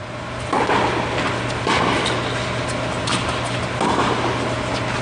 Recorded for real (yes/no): yes